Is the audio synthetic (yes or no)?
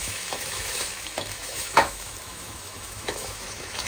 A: yes